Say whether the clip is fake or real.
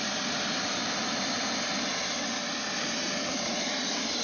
real